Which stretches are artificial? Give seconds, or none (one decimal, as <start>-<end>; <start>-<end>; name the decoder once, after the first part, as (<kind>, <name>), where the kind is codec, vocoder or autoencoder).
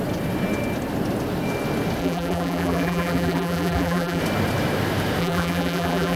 2.0-4.2 (vocoder, BigVGAN v2); 5.2-6.2